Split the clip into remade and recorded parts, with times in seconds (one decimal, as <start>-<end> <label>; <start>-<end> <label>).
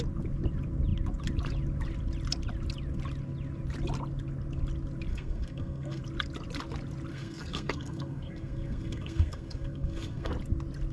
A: 0.0-5.1 recorded; 5.1-6.0 remade; 6.0-7.1 recorded; 7.1-10.3 remade; 10.3-10.9 recorded